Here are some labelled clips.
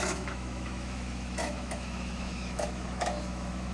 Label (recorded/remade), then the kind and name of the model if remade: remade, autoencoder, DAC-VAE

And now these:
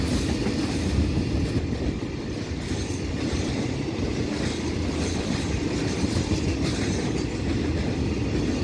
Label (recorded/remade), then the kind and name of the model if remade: recorded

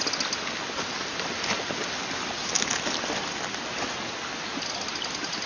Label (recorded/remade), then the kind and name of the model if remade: recorded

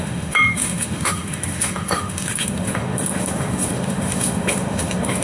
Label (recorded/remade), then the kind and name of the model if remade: remade, autoencoder, DAC-VAE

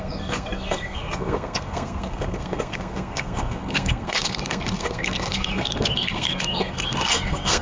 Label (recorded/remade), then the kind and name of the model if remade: remade, codec, SNAC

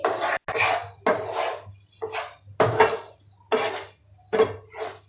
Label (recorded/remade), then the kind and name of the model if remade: recorded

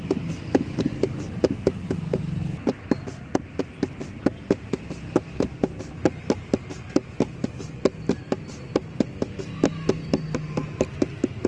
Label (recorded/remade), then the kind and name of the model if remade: recorded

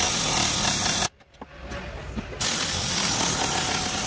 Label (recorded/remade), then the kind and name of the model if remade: recorded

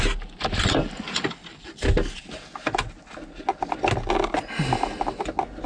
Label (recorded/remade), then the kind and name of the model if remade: recorded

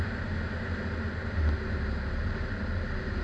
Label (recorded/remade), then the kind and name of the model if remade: recorded